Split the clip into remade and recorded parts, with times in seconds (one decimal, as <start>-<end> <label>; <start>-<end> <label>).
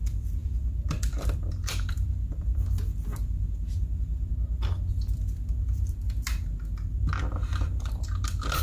0.0-4.3 remade; 4.3-4.9 recorded; 4.9-6.4 remade; 6.4-7.0 recorded; 7.0-8.6 remade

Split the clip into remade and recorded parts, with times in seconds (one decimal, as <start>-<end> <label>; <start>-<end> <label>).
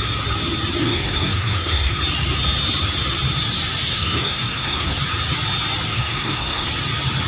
0.0-0.8 recorded; 0.8-2.0 remade; 2.0-3.9 recorded; 3.9-5.0 remade; 5.0-5.9 recorded; 5.9-6.7 remade; 6.7-7.3 recorded